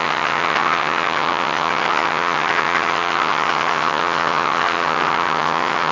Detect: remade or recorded remade